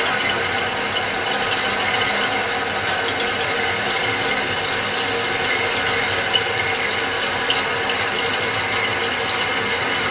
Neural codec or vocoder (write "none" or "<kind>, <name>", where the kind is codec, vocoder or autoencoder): none